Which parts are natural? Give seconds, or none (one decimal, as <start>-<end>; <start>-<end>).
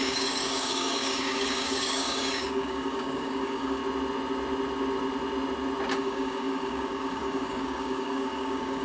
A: 3.8-5.9